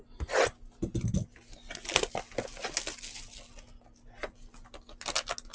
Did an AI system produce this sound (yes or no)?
no